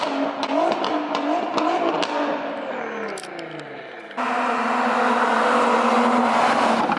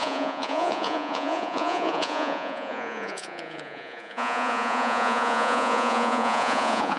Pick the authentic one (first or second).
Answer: first